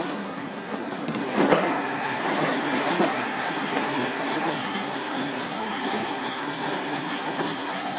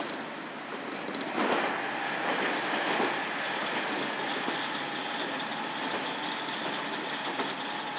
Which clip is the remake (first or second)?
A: first